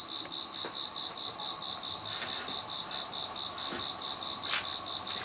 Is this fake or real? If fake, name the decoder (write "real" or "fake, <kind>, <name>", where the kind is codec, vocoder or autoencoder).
real